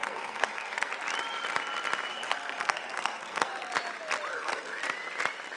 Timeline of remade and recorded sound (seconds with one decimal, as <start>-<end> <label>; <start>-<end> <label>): 0.0-0.9 remade; 0.9-2.1 recorded; 2.1-3.7 remade; 3.7-4.3 recorded; 4.3-4.8 remade; 4.8-5.6 recorded

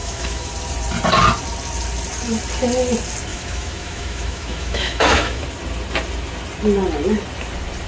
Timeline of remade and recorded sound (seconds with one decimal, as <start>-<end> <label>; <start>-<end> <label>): 0.0-0.5 remade; 0.5-3.3 recorded; 3.3-5.4 remade; 5.4-7.9 recorded

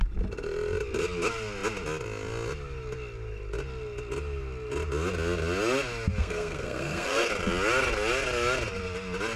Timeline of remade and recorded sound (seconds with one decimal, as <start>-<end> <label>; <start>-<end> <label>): 0.0-6.2 recorded; 6.2-7.3 remade; 7.3-9.4 recorded

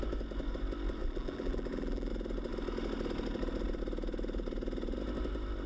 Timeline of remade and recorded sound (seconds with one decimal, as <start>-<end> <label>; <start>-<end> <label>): 0.0-1.0 recorded; 1.0-2.1 remade; 2.1-5.7 recorded